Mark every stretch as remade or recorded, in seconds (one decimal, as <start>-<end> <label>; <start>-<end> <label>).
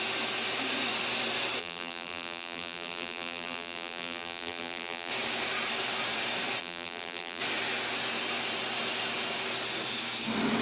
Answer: 0.0-1.6 recorded; 1.6-5.1 remade; 5.1-6.6 recorded; 6.6-7.4 remade; 7.4-10.6 recorded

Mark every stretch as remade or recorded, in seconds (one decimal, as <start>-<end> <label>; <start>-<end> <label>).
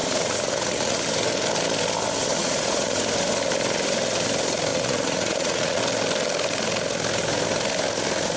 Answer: 0.0-1.0 remade; 1.0-2.4 recorded; 2.4-3.0 remade; 3.0-4.7 recorded; 4.7-5.8 remade; 5.8-8.4 recorded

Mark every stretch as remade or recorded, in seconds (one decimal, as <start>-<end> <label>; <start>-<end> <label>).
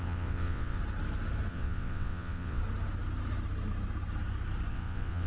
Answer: 0.0-0.8 remade; 0.8-1.5 recorded; 1.5-2.6 remade; 2.6-4.7 recorded; 4.7-5.3 remade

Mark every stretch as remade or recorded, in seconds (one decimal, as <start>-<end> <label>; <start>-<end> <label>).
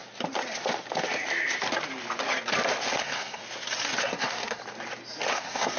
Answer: 0.0-3.0 recorded; 3.0-3.4 remade; 3.4-4.0 recorded; 4.0-4.6 remade; 4.6-5.3 recorded; 5.3-5.8 remade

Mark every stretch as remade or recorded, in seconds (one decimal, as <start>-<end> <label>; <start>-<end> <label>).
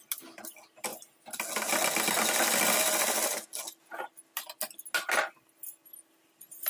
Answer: 0.0-6.7 recorded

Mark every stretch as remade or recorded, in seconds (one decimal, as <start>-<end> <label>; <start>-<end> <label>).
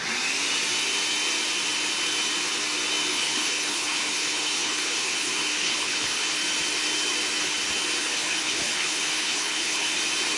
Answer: 0.0-3.1 recorded; 3.1-6.4 remade; 6.4-8.0 recorded; 8.0-10.0 remade; 10.0-10.4 recorded